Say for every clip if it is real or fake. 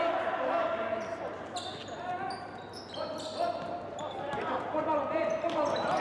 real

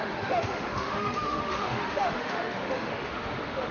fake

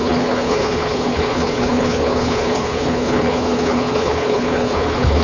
fake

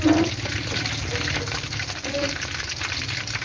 real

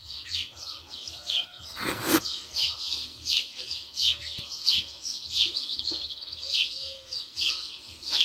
fake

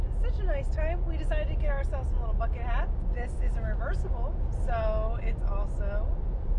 real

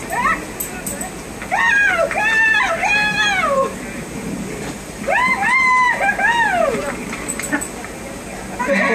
real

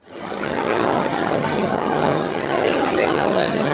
fake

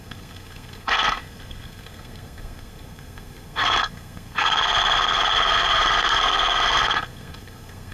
fake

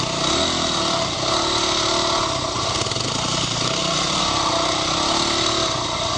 real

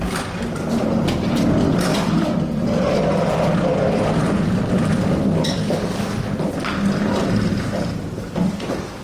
fake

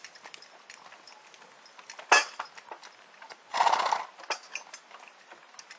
real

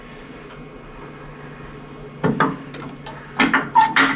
real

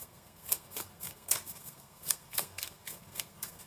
fake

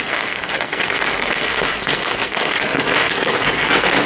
fake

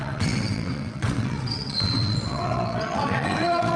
fake